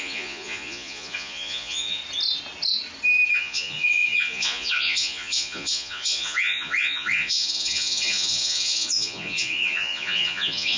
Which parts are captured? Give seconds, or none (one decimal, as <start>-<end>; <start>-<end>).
2.0-3.3

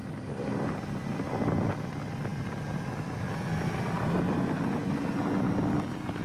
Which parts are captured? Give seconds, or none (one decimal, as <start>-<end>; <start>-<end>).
1.3-2.3; 5.2-6.2

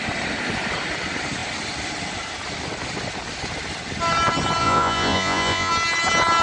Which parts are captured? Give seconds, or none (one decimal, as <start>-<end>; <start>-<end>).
0.0-4.6; 5.7-6.4

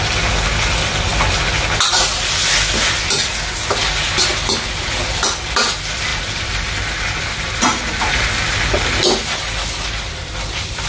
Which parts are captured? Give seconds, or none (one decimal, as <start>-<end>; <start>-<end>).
0.0-6.1; 8.3-10.9

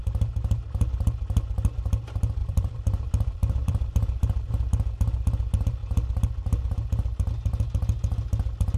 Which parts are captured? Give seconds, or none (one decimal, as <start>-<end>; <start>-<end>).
0.0-2.4; 4.5-8.8

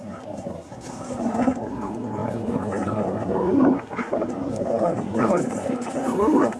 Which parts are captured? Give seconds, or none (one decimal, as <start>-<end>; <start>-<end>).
none

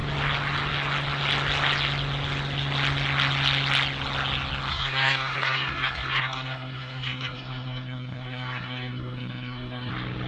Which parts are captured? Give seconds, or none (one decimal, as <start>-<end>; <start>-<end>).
0.0-4.7; 9.9-10.3